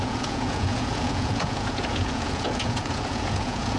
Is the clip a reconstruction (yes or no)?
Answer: yes